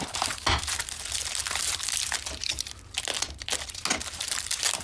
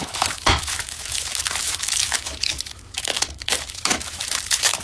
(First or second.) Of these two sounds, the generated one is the second